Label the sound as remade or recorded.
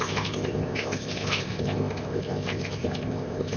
remade